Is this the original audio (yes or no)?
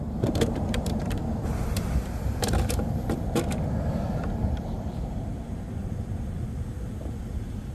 no